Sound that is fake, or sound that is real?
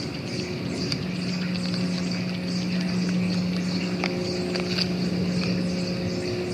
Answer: real